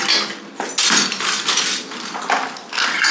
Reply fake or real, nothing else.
real